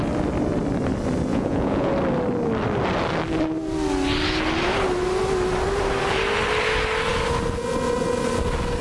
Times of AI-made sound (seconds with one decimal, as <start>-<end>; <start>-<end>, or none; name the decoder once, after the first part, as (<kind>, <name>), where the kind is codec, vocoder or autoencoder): 1.3-1.9 (vocoder, Vocos)